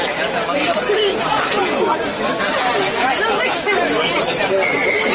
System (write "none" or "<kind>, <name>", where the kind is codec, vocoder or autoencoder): none